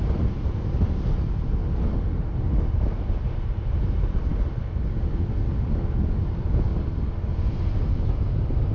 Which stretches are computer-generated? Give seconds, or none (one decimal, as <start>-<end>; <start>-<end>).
0.0-1.6; 2.6-4.3; 6.2-6.7; 8.2-8.7